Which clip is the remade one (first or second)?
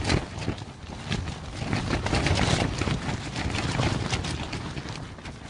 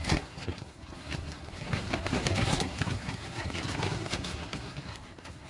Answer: second